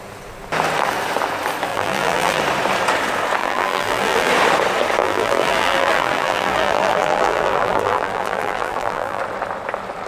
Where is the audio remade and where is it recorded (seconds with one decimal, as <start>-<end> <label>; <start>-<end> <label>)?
0.0-1.7 recorded; 1.7-2.4 remade; 2.4-3.4 recorded; 3.4-4.3 remade; 4.3-5.0 recorded; 5.0-9.2 remade; 9.2-10.1 recorded